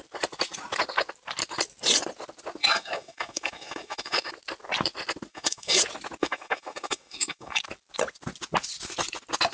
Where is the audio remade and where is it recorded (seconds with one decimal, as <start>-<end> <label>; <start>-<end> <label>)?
0.0-2.6 recorded; 2.6-4.3 remade; 4.3-5.3 recorded; 5.3-5.8 remade; 5.8-6.2 recorded; 6.2-7.6 remade; 7.6-9.5 recorded